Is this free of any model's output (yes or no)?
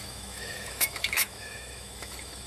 no